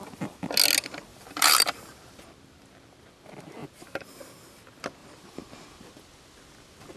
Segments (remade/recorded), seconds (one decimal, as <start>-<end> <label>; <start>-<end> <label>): 0.0-1.1 recorded; 1.1-2.2 remade; 2.2-3.6 recorded; 3.6-4.4 remade; 4.4-5.0 recorded; 5.0-5.9 remade; 5.9-7.0 recorded

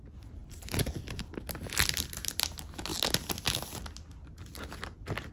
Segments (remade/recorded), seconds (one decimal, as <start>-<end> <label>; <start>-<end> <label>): 0.0-5.3 recorded

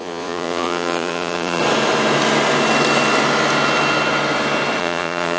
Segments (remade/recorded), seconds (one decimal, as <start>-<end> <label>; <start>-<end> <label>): 0.0-1.6 remade; 1.6-4.8 recorded; 4.8-5.4 remade

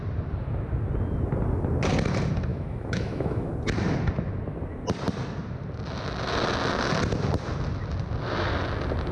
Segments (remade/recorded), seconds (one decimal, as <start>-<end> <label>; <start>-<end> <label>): 0.0-2.5 recorded; 2.5-3.5 remade; 3.5-9.1 recorded

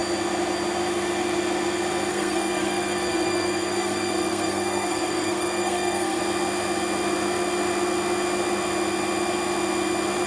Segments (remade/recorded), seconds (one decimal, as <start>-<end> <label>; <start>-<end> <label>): 0.0-2.1 recorded; 2.1-6.2 remade; 6.2-10.3 recorded

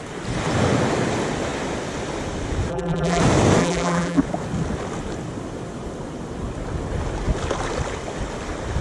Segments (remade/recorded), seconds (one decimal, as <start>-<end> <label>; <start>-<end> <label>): 0.0-2.7 recorded; 2.7-3.2 remade; 3.2-3.6 recorded; 3.6-4.2 remade; 4.2-8.8 recorded

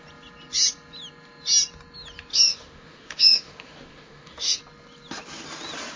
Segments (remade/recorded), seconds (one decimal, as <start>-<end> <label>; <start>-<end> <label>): 0.0-2.3 recorded; 2.3-4.6 remade; 4.6-6.0 recorded